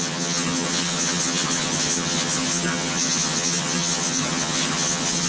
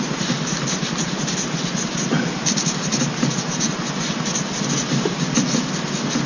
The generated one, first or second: first